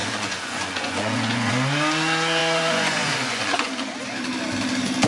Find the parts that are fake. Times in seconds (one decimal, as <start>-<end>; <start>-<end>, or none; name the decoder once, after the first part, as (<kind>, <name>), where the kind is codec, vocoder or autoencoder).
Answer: 0.0-1.5 (vocoder, Vocos); 2.4-3.7